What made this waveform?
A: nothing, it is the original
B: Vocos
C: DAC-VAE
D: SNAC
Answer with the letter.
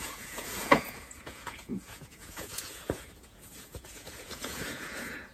B